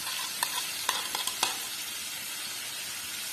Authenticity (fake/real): real